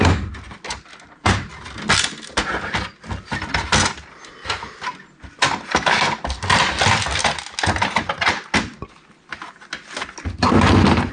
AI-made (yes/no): no